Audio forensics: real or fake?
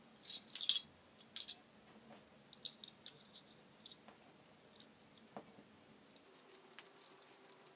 real